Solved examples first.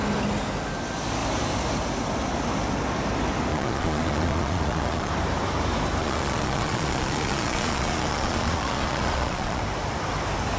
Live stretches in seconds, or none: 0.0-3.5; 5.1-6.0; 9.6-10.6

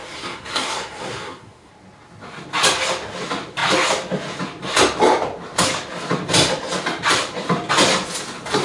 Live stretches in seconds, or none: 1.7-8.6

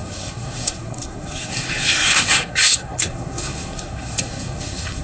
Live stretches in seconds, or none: none

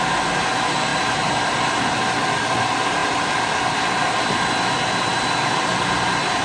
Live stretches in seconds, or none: 0.0-6.4